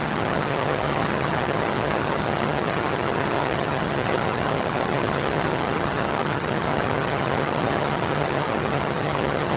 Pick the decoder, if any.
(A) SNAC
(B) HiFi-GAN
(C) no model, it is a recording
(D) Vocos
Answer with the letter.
B